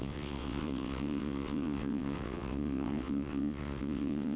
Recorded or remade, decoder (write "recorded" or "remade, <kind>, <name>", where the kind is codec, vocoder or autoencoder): remade, vocoder, WaveNeXt